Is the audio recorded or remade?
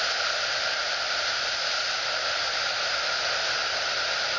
recorded